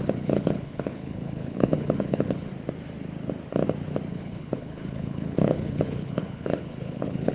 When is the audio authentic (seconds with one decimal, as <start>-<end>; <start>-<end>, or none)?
2.5-4.1